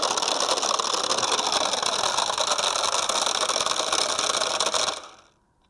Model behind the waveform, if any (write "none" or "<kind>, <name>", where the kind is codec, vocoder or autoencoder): none